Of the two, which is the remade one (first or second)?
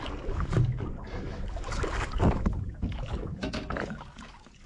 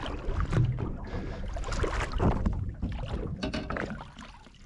first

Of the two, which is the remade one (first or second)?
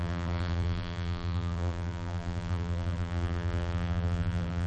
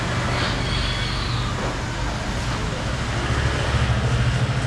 first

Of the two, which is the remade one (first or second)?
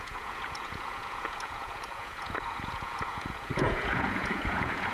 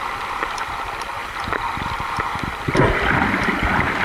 first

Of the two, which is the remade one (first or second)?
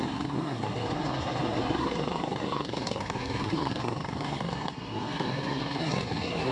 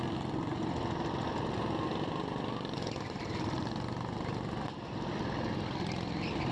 first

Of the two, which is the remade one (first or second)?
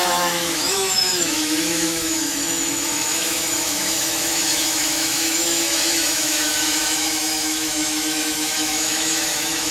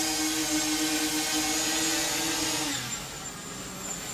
first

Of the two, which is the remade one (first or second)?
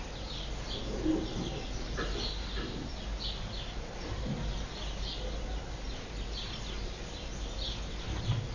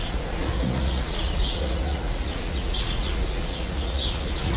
second